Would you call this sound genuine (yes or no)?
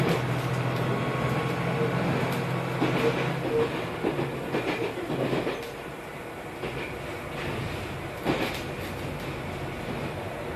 yes